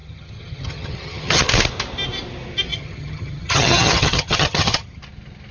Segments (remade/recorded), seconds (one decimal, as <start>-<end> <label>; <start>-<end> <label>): 0.0-1.4 remade; 1.4-2.7 recorded; 2.7-5.0 remade; 5.0-5.5 recorded